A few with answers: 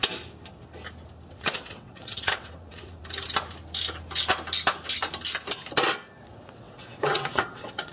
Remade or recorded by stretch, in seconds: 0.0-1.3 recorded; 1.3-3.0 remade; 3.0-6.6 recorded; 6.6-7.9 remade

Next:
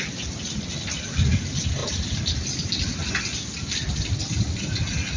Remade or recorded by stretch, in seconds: 0.0-5.2 recorded

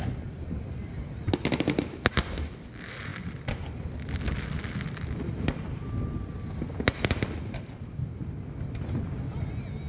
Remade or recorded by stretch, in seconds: 0.0-9.9 recorded

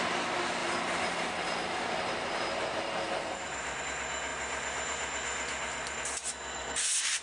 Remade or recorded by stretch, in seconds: 0.0-0.6 recorded; 0.6-3.8 remade; 3.8-4.3 recorded; 4.3-6.0 remade; 6.0-7.2 recorded

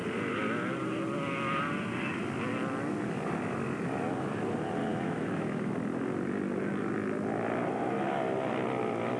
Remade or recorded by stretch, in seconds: 0.0-4.9 recorded; 4.9-5.7 remade; 5.7-9.2 recorded

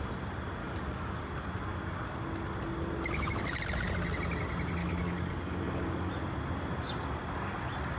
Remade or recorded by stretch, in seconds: 0.0-0.6 recorded; 0.6-1.2 remade; 1.2-4.8 recorded; 4.8-6.1 remade; 6.1-8.0 recorded

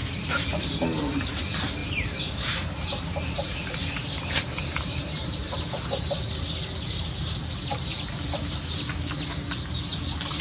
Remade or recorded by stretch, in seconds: 0.0-1.8 recorded; 1.8-5.6 remade; 5.6-10.4 recorded